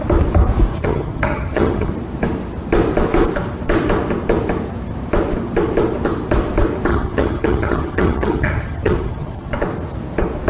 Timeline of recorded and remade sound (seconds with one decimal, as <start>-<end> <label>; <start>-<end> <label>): 0.0-0.7 recorded; 0.7-1.9 remade; 1.9-6.9 recorded; 6.9-9.5 remade; 9.5-10.5 recorded

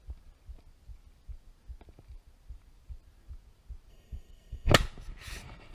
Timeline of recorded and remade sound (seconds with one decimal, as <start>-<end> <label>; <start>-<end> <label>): 0.0-3.9 recorded; 3.9-4.7 remade; 4.7-5.7 recorded

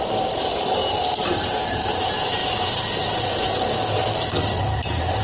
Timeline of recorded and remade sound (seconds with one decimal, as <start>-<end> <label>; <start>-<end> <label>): 0.0-0.8 remade; 0.8-1.7 recorded; 1.7-2.4 remade; 2.4-4.6 recorded; 4.6-5.2 remade